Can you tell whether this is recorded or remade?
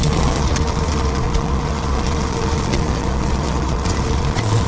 remade